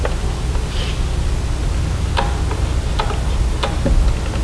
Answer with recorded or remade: recorded